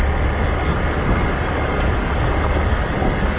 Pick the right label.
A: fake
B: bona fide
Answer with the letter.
B